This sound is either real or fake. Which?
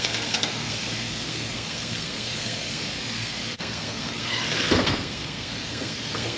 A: fake